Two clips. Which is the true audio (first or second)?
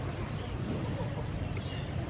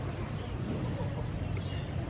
second